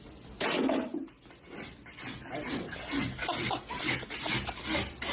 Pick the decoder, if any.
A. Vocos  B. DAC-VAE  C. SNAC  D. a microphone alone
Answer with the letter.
D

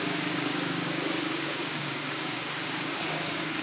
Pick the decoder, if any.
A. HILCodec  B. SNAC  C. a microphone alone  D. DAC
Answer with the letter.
D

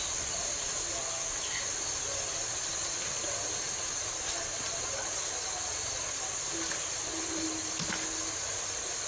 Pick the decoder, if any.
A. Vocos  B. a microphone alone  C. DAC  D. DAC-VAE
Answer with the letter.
B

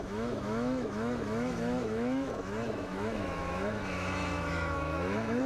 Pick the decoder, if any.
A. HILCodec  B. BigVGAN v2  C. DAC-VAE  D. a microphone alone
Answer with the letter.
C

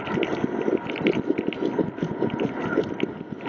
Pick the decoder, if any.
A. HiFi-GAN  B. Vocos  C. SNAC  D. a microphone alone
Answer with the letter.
D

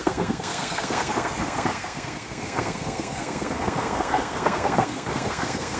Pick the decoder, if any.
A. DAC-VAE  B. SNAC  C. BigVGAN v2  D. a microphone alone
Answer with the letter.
B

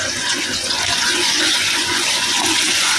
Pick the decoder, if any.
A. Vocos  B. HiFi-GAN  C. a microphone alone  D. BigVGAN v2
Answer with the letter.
A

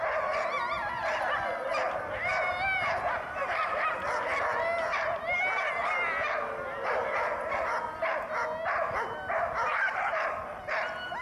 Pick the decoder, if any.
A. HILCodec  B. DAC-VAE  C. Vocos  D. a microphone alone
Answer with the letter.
D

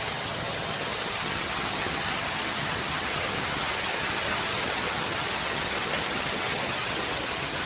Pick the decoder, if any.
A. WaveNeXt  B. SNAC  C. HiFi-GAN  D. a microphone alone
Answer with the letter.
C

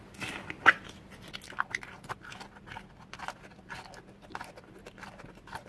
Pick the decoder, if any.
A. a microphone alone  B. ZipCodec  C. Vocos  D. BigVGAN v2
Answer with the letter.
A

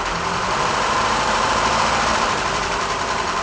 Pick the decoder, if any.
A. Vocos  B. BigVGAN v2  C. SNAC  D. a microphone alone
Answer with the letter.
B